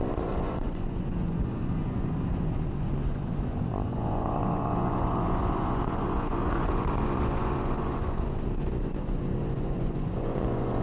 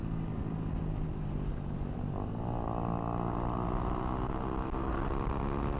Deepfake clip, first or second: first